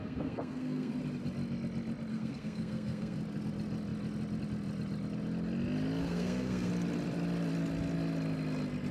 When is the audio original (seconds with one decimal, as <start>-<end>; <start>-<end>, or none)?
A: 0.9-2.1; 3.2-6.0; 6.7-8.9